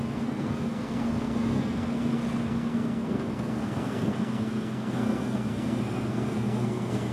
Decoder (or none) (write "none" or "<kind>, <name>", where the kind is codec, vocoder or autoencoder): codec, SNAC